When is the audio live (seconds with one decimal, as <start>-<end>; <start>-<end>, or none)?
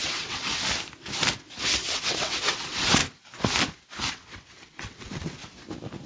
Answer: 0.5-1.9; 3.0-4.1; 5.4-6.1